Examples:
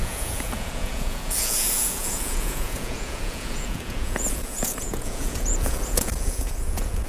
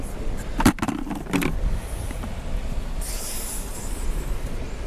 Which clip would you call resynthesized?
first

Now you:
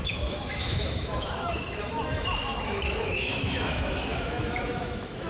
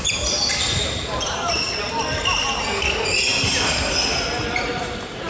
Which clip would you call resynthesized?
first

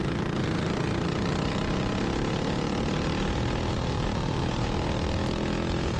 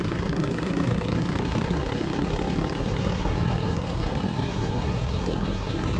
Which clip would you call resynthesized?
second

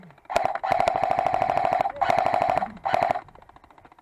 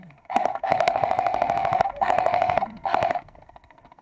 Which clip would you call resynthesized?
second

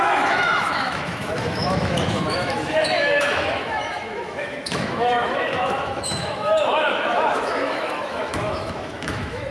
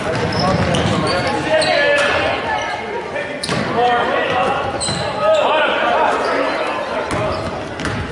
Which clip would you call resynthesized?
first